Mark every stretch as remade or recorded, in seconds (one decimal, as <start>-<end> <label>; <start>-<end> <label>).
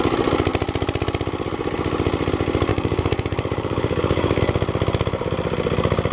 0.0-2.7 recorded; 2.7-4.4 remade; 4.4-6.1 recorded